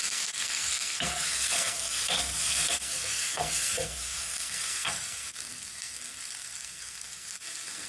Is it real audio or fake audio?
fake